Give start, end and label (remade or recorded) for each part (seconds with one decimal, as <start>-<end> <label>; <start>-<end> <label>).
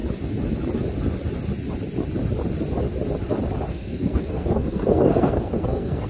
0.0-3.7 recorded; 3.7-6.1 remade